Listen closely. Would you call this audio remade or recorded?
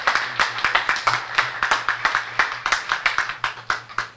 recorded